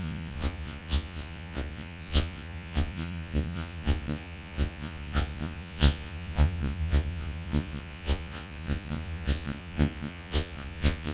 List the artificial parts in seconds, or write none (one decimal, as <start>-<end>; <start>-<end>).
0.0-11.1